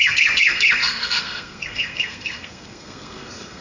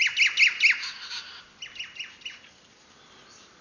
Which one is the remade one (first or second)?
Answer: first